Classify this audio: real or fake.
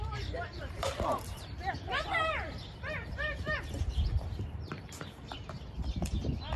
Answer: fake